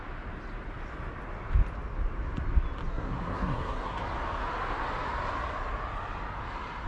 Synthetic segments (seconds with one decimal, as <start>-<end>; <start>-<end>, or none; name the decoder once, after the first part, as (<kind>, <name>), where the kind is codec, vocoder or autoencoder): 2.9-4.0 (codec, SNAC)